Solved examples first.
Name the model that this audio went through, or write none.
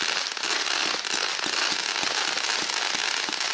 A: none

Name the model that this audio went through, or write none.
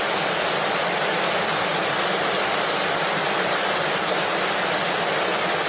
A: none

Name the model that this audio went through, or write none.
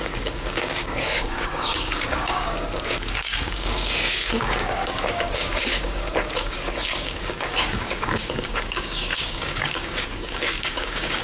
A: codec, DAC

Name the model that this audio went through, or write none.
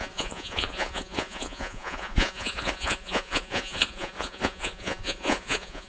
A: vocoder, Vocos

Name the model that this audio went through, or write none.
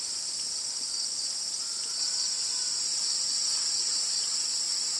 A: none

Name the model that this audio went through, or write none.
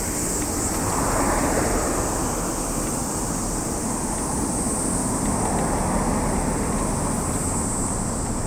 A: none